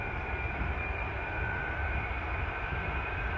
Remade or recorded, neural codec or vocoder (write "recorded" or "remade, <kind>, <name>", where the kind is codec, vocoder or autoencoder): remade, vocoder, BigVGAN v2